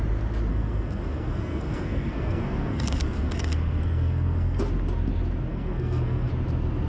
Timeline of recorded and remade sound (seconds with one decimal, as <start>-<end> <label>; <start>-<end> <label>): 0.0-0.5 recorded; 0.5-4.6 remade; 4.6-5.5 recorded; 5.5-6.3 remade; 6.3-6.9 recorded